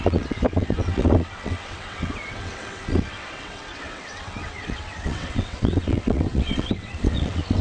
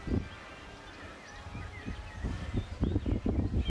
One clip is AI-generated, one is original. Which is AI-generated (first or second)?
first